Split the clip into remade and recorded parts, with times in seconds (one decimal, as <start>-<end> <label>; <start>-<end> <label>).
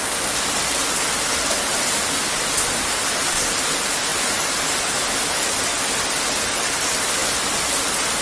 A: 0.0-8.2 recorded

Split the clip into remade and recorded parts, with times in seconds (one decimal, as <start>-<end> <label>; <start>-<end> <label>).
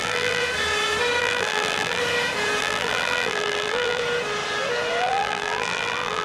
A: 0.0-0.4 remade; 0.4-1.2 recorded; 1.2-2.0 remade; 2.0-2.6 recorded; 2.6-4.0 remade; 4.0-5.0 recorded; 5.0-6.2 remade